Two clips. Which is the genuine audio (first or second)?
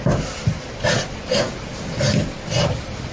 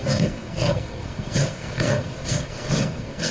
first